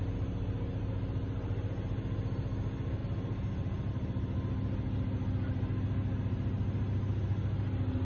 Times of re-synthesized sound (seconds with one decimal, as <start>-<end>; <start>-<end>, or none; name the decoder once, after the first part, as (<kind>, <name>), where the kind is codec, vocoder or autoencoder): none